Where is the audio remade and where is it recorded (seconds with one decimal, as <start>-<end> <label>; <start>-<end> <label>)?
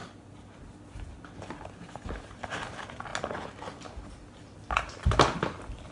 0.0-5.9 recorded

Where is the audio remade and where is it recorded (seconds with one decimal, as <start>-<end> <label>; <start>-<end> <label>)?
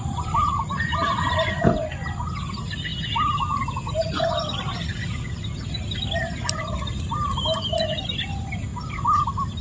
0.0-2.9 remade; 2.9-5.8 recorded; 5.8-8.7 remade; 8.7-9.2 recorded; 9.2-9.6 remade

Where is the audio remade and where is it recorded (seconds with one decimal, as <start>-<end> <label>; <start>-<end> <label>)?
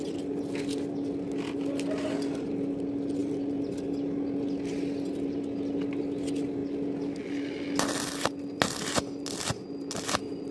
0.0-10.5 recorded